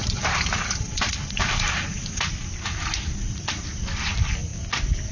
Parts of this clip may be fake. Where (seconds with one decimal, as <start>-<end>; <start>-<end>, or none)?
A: 0.0-2.2